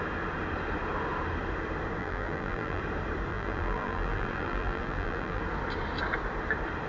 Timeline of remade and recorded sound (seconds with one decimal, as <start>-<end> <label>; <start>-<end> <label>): 0.0-2.0 recorded; 2.0-2.8 remade; 2.8-3.3 recorded; 3.3-5.4 remade; 5.4-6.9 recorded